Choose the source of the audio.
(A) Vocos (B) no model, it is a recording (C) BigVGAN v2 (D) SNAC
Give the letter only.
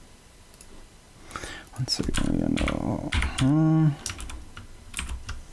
B